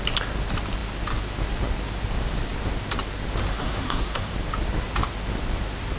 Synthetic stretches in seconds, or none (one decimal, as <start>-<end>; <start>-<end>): 3.6-4.3